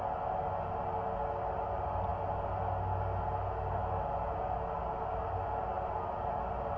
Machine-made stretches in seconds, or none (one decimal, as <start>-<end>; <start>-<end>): none